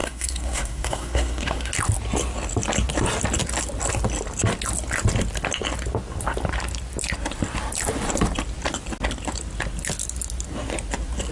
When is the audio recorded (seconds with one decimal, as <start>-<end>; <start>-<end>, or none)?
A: 1.7-11.3